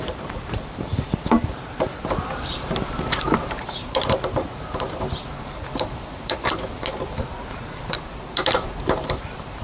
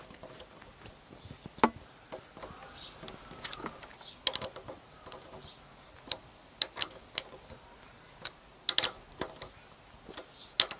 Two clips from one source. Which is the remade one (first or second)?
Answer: first